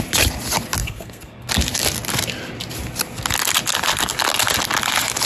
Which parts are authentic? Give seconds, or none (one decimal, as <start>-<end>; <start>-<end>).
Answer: 0.0-0.8; 1.5-5.3